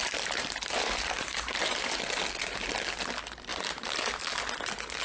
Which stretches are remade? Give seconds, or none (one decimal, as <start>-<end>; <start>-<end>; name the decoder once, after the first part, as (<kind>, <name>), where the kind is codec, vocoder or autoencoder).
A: 0.0-2.2 (vocoder, BigVGAN v2); 3.5-4.2